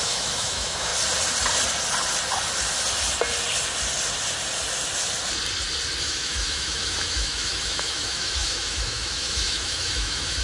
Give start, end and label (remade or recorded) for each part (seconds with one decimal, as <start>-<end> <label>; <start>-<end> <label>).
0.0-0.9 remade; 0.9-6.0 recorded; 6.0-10.4 remade